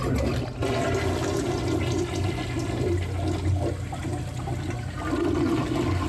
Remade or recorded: recorded